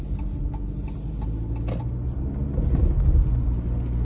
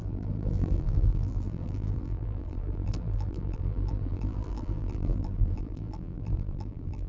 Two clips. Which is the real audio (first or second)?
first